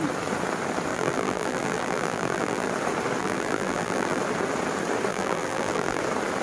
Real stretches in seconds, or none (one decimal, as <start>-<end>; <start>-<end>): 0.0-0.9; 2.7-3.2; 4.2-5.1; 6.0-6.4